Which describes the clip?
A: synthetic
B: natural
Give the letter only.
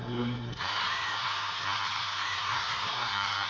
A